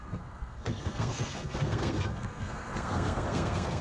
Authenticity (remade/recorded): remade